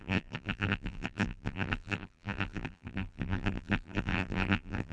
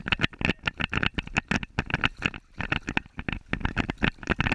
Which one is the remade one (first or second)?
first